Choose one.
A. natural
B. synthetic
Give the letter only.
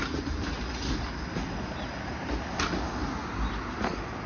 A